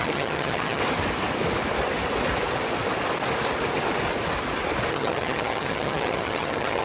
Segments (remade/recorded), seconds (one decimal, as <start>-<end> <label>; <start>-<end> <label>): 0.0-0.8 remade; 0.8-4.9 recorded; 4.9-6.8 remade